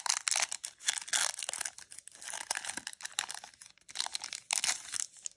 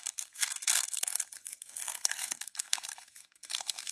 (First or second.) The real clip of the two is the first